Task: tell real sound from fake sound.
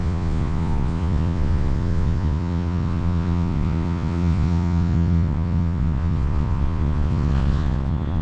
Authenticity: fake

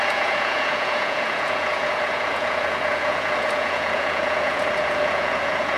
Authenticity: fake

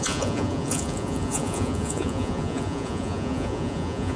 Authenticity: fake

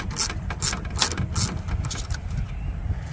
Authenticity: real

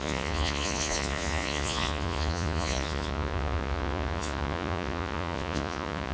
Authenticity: fake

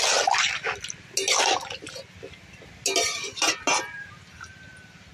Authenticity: real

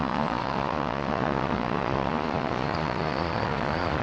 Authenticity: fake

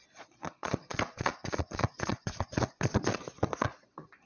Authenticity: fake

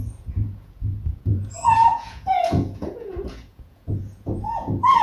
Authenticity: fake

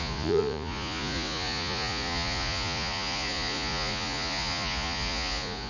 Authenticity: fake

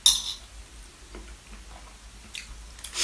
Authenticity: real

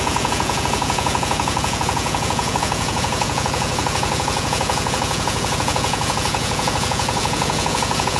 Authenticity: fake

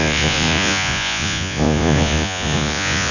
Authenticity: fake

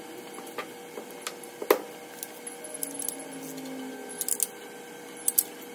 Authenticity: real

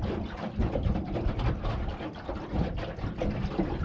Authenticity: real